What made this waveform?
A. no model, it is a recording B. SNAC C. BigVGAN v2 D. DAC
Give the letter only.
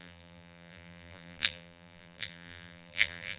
C